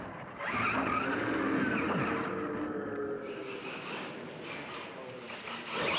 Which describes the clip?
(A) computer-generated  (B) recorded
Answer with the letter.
B